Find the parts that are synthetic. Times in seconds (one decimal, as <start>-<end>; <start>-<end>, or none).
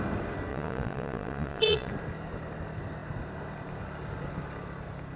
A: 0.5-1.9